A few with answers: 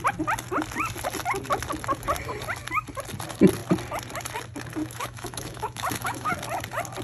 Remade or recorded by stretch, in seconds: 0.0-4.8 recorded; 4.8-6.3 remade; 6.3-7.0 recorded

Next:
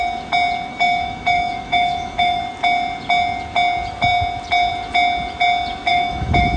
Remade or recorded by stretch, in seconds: 0.0-0.7 recorded; 0.7-2.4 remade; 2.4-5.9 recorded; 5.9-6.6 remade

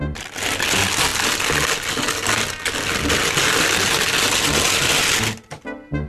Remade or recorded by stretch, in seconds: 0.0-6.1 recorded

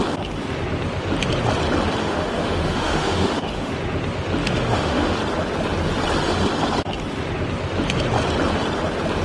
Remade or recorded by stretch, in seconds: 0.0-2.0 recorded; 2.0-3.7 remade; 3.7-4.4 recorded; 4.4-5.2 remade; 5.2-9.2 recorded